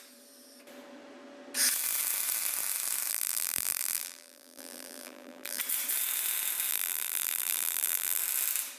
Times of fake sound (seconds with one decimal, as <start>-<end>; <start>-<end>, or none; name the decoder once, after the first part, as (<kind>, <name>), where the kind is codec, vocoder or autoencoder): 3.1-5.6 (vocoder, BigVGAN v2); 6.7-8.2